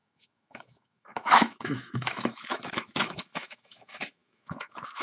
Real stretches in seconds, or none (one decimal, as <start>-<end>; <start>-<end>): none